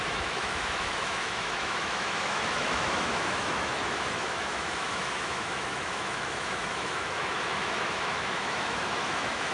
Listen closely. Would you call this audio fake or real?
fake